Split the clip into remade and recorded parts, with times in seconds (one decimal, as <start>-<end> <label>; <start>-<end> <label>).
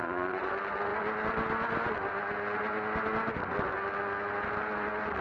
0.0-0.5 remade; 0.5-5.2 recorded